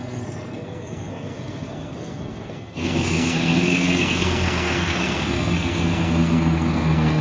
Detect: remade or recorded remade